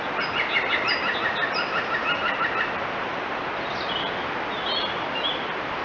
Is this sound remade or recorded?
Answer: recorded